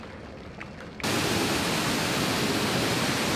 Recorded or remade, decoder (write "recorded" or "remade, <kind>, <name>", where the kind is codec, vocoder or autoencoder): recorded